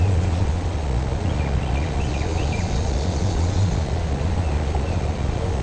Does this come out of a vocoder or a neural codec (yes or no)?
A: yes